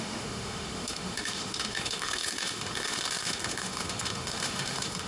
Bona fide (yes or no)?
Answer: no